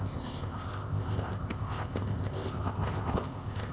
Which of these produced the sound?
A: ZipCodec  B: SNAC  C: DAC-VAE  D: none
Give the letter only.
A